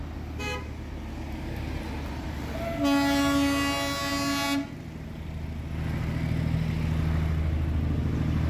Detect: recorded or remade recorded